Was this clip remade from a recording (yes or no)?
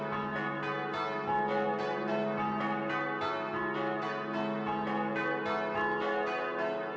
no